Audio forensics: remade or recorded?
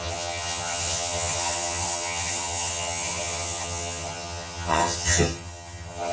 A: remade